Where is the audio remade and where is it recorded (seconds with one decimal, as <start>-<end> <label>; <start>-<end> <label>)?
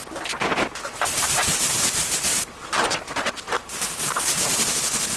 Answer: 0.0-1.1 recorded; 1.1-5.2 remade